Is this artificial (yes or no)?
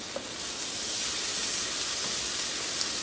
no